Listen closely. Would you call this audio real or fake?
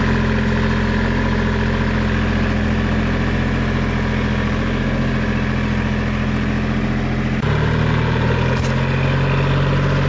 real